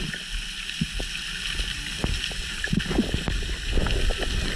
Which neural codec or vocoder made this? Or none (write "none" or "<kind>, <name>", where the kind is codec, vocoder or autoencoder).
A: none